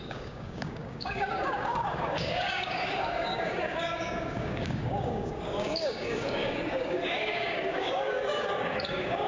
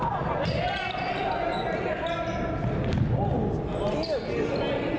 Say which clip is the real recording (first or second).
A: second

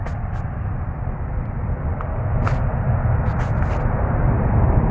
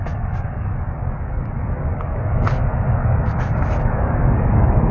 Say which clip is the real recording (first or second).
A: first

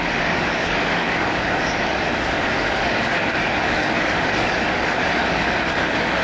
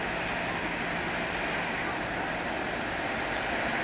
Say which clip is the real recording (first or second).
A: second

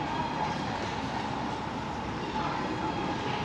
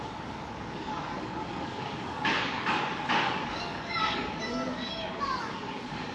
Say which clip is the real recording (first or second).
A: first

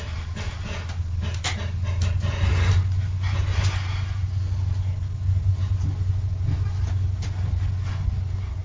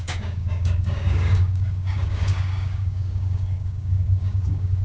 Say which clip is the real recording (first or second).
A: first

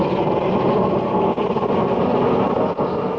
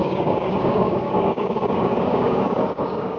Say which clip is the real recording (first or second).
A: first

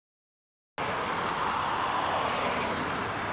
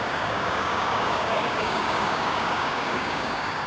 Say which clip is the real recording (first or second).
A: first